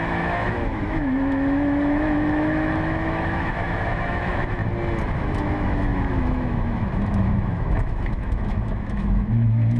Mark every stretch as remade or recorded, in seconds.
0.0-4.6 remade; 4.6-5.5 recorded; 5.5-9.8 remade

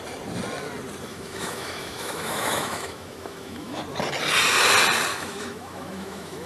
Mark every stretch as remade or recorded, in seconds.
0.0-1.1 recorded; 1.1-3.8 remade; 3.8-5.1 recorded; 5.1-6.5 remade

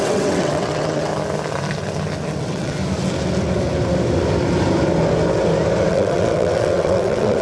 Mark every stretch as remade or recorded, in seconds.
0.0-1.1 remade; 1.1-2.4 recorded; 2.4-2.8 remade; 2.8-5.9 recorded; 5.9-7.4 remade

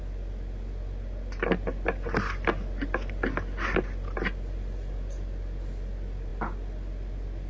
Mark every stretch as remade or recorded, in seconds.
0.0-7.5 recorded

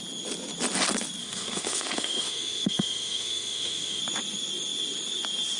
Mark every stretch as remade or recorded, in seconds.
0.0-1.2 recorded; 1.2-4.0 remade; 4.0-5.6 recorded

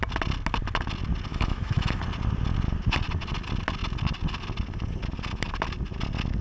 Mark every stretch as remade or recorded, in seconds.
0.0-1.3 recorded; 1.3-2.0 remade; 2.0-6.4 recorded

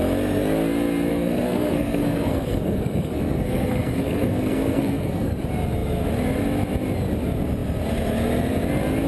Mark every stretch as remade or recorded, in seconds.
0.0-1.1 recorded; 1.1-5.3 remade; 5.3-9.1 recorded

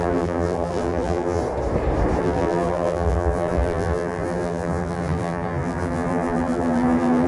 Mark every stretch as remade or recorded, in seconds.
0.0-1.4 remade; 1.4-2.2 recorded; 2.2-7.3 remade